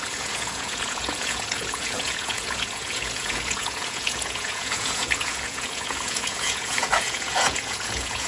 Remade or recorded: remade